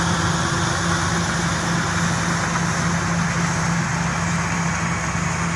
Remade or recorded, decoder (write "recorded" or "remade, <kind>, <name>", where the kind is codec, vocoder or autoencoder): recorded